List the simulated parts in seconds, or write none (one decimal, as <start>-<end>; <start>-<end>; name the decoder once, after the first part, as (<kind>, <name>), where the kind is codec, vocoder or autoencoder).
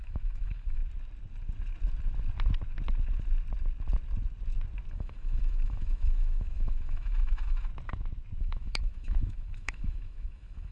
0.0-0.8 (autoencoder, DAC-VAE); 4.9-7.7; 8.4-10.7